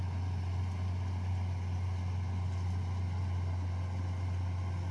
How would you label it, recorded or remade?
recorded